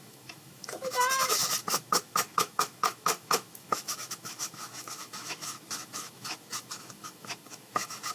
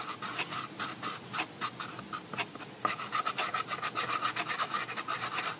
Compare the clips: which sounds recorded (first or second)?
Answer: second